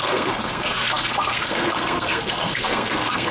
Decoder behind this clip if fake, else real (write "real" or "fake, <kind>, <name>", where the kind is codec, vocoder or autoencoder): fake, codec, SNAC